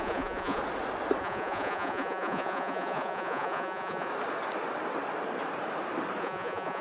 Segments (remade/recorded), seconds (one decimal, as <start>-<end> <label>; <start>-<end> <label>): 0.0-0.6 remade; 0.6-1.2 recorded; 1.2-4.1 remade; 4.1-6.2 recorded; 6.2-6.8 remade